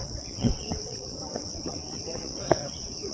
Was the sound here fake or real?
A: fake